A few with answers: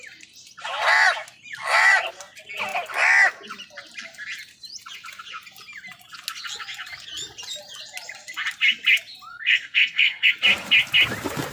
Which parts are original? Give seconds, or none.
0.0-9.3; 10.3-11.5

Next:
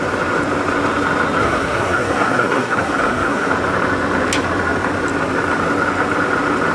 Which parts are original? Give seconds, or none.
0.0-1.4; 3.5-6.7

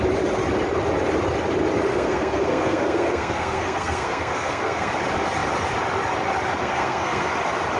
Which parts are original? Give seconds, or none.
0.0-1.9; 4.9-6.6; 7.3-7.8

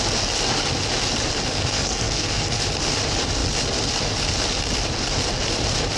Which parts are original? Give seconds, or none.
0.0-1.6; 2.6-6.0

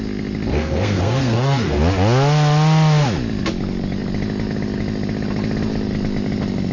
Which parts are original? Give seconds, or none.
0.0-0.5; 1.8-6.7

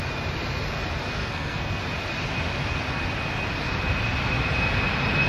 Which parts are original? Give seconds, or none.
0.0-1.2; 1.8-5.3

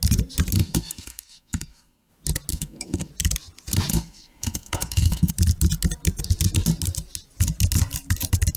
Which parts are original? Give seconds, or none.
0.0-0.6; 2.1-2.5; 3.1-3.9; 5.3-8.6

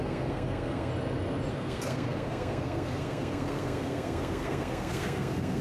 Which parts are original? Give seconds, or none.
0.9-1.5